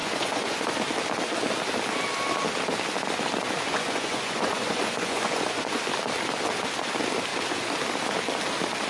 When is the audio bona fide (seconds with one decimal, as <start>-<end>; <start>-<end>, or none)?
0.7-3.7; 5.8-8.9